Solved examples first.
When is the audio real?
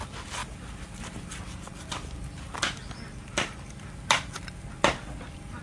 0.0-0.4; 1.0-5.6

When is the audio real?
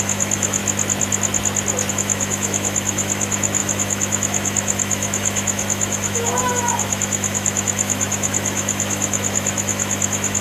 0.6-1.9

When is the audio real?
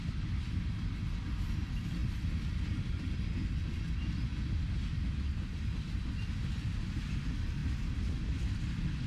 0.0-9.1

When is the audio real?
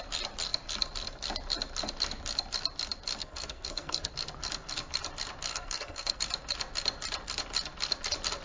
0.0-3.2; 4.1-5.5; 6.2-8.4